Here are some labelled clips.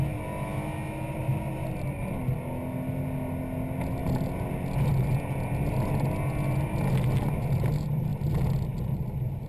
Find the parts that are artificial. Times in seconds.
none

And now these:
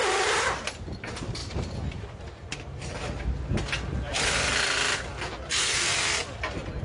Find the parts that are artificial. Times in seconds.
1.4-3.2 (vocoder, BigVGAN v2)

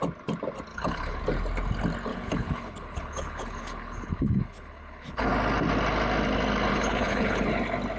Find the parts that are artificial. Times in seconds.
0.7-1.2 (codec, HILCodec); 2.1-5.3; 6.7-7.5

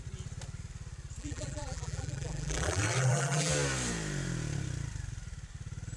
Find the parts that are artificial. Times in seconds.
1.2-3.5 (vocoder, BigVGAN v2)